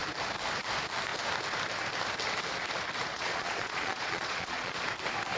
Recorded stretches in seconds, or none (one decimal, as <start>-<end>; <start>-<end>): 0.0-3.1; 4.8-5.4